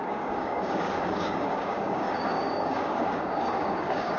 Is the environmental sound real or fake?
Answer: fake